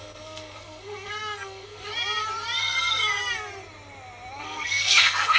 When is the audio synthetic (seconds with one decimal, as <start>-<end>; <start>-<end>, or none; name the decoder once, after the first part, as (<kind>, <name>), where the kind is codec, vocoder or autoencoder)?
0.0-1.9 (codec, SNAC); 2.6-3.2; 4.4-5.4